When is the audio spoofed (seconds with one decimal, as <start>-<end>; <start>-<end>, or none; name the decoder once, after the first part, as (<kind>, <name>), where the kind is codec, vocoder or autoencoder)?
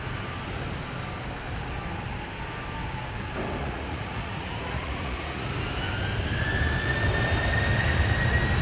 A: 3.6-5.5 (vocoder, Vocos)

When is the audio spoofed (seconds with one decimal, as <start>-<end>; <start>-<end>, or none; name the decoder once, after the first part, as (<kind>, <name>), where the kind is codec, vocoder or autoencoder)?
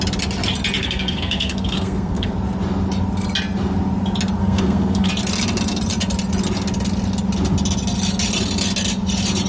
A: 0.8-2.3 (codec, SNAC); 4.4-5.1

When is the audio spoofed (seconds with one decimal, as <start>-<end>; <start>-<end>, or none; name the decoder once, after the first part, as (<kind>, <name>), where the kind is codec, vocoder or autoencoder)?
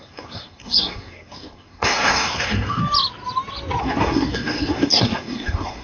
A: 0.0-2.8 (codec, SNAC); 3.8-5.8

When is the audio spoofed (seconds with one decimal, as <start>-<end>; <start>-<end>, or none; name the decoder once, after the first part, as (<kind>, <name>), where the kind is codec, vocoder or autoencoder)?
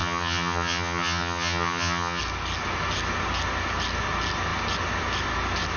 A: 0.0-2.2 (vocoder, HiFi-GAN)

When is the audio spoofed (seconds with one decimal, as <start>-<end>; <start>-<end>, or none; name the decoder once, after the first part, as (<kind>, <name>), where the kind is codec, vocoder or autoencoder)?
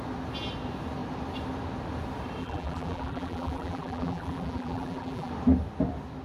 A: 2.4-5.3 (vocoder, BigVGAN v2)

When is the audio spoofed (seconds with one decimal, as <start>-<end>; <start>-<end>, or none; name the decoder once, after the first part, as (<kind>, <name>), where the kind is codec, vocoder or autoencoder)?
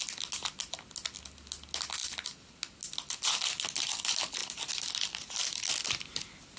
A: none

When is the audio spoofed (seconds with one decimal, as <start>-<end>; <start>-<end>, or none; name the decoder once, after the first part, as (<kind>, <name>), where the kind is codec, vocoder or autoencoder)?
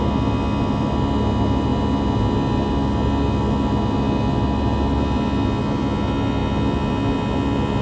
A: none